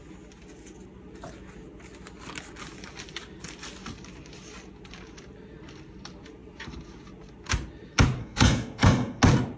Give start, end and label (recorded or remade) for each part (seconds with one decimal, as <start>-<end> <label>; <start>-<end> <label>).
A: 0.0-8.2 recorded; 8.2-9.2 remade; 9.2-9.6 recorded